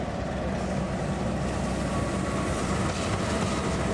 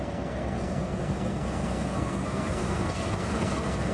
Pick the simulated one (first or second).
second